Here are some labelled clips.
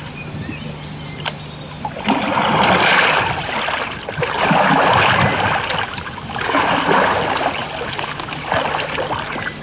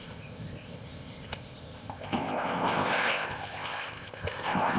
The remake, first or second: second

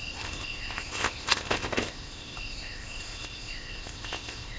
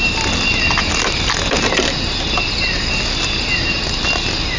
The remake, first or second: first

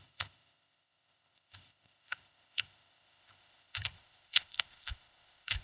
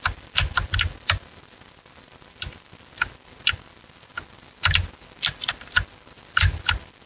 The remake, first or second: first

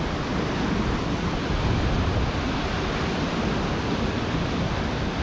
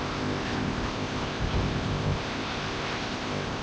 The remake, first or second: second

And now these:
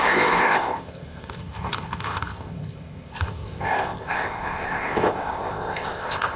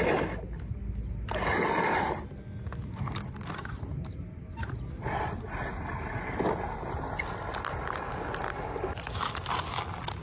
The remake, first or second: first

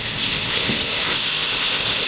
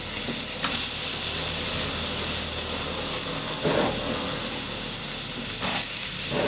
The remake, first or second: first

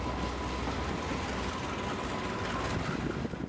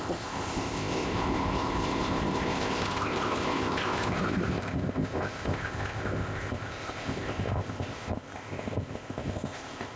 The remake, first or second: second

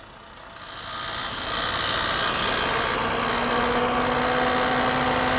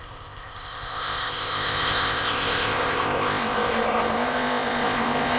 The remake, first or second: second